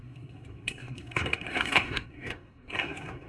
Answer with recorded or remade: remade